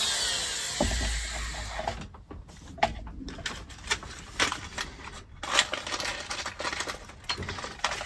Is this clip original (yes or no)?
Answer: yes